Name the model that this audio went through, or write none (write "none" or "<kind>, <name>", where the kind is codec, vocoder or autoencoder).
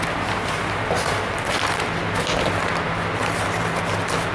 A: none